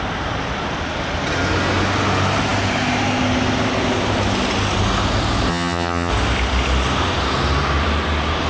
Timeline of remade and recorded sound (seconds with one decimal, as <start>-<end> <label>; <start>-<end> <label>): 0.0-5.5 recorded; 5.5-6.1 remade; 6.1-8.5 recorded